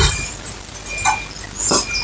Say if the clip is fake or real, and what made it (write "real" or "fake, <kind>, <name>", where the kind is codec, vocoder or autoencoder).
real